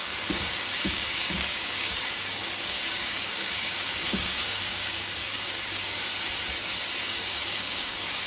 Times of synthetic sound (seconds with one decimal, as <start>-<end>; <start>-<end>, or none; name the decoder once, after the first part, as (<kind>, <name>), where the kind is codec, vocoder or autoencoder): 0.0-6.1 (codec, DAC); 7.0-8.3